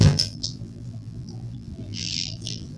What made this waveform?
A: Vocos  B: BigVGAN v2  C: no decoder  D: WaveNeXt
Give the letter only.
B